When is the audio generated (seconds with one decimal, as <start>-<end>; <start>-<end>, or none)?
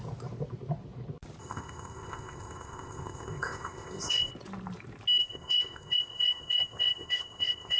1.4-4.3; 5.2-7.8